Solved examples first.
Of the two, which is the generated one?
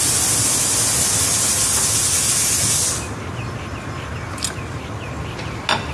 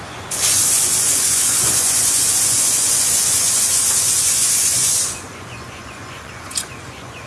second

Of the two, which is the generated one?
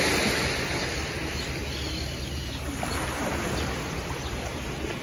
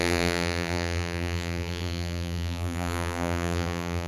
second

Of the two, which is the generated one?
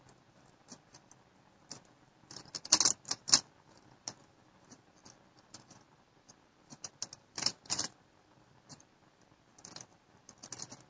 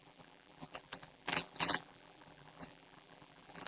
second